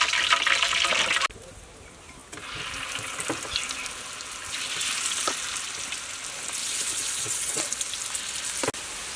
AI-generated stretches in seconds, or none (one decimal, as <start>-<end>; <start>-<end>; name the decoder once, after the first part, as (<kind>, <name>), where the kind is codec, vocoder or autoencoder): 6.6-7.6 (vocoder, WaveNeXt)